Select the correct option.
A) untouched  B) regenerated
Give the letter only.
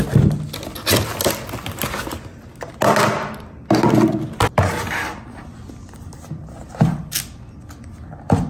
A